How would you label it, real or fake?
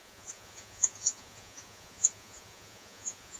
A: fake